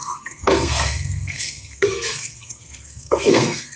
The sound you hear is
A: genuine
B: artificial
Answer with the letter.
B